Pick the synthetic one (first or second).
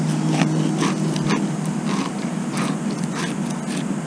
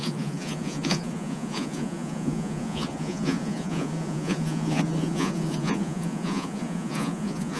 second